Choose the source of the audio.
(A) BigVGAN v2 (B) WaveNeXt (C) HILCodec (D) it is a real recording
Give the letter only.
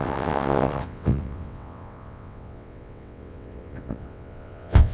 B